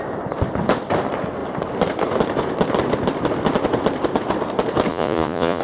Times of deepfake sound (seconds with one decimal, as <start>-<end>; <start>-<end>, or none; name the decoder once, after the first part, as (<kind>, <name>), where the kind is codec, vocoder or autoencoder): 4.9-5.6 (vocoder, Vocos)